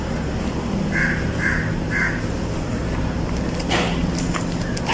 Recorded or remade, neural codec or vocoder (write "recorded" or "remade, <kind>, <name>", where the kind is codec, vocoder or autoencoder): recorded